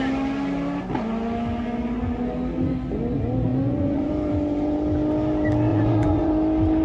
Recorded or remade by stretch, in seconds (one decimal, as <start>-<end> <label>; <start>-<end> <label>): 0.0-3.5 recorded; 3.5-4.1 remade; 4.1-5.7 recorded; 5.7-6.3 remade; 6.3-6.8 recorded